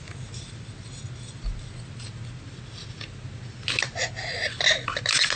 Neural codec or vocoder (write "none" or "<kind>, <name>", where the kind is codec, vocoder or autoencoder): none